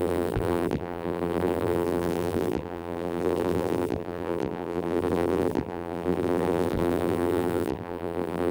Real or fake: fake